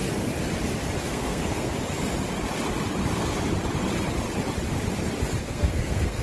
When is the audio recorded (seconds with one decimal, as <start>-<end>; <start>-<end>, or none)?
0.0-1.0; 1.7-5.4